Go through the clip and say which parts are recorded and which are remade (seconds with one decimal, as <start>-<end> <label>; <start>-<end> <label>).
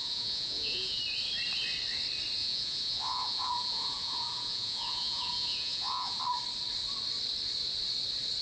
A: 0.0-1.0 remade; 1.0-2.4 recorded; 2.4-6.2 remade; 6.2-8.4 recorded